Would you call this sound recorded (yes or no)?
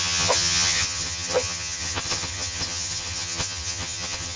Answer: no